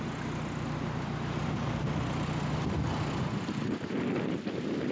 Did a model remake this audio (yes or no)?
no